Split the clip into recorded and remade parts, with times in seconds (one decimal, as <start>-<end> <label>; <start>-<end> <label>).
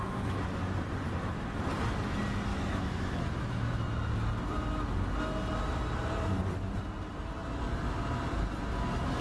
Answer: 0.0-2.5 recorded; 2.5-3.8 remade; 3.8-9.2 recorded